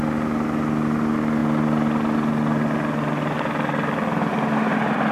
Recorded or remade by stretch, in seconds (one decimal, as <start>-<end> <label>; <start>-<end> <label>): 0.0-5.1 recorded